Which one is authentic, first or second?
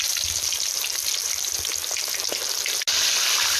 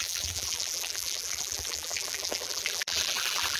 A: first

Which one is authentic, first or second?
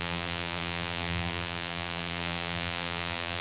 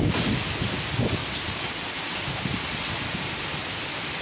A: second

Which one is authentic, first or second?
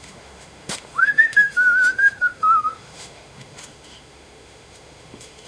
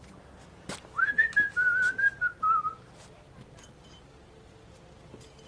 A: second